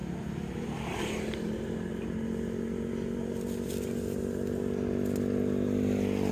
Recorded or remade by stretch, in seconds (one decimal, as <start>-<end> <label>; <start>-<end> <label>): 0.0-6.3 recorded

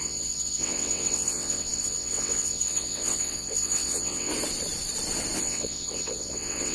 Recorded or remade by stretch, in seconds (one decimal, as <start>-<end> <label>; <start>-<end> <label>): 0.0-4.3 remade; 4.3-5.4 recorded; 5.4-6.7 remade

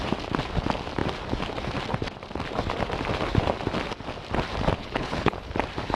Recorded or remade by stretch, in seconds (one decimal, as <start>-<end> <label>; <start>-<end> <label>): 0.0-4.8 recorded; 4.8-5.5 remade; 5.5-6.0 recorded

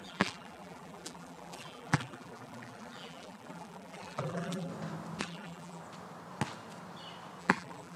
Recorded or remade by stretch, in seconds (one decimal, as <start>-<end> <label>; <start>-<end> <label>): 0.0-4.7 remade; 4.7-5.2 recorded; 5.2-5.8 remade; 5.8-7.4 recorded; 7.4-8.0 remade

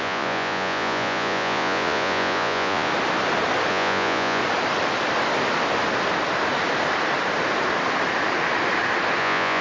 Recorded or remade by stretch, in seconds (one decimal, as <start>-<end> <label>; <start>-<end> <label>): 0.0-2.9 remade; 2.9-3.7 recorded; 3.7-4.4 remade; 4.4-9.2 recorded; 9.2-9.6 remade

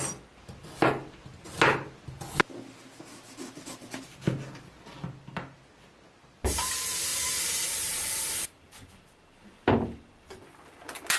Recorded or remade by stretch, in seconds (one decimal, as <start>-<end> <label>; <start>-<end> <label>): 0.0-7.1 recorded; 7.1-8.9 remade; 8.9-11.2 recorded

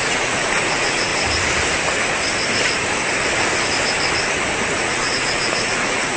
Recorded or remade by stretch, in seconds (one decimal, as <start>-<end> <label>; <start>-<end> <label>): 0.0-1.1 remade; 1.1-4.8 recorded; 4.8-6.2 remade

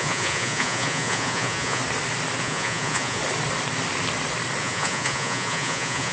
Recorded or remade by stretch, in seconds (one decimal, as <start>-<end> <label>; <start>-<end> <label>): 0.0-1.8 remade; 1.8-2.4 recorded; 2.4-3.2 remade; 3.2-4.6 recorded; 4.6-6.1 remade